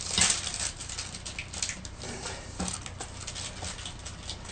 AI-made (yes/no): no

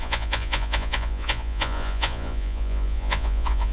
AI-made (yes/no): yes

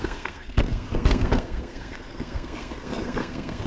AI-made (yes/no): yes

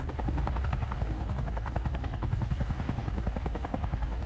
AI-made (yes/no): yes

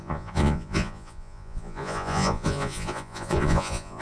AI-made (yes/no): yes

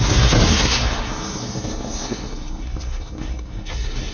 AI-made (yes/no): yes